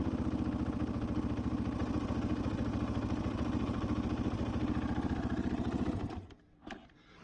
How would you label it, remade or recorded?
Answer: recorded